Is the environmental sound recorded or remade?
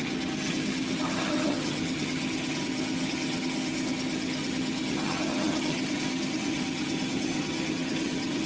remade